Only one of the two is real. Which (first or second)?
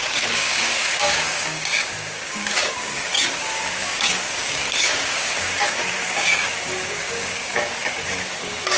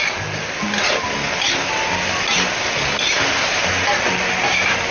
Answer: second